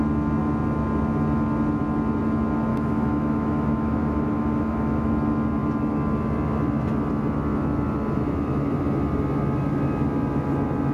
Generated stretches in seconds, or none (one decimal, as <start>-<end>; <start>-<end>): 2.7-5.1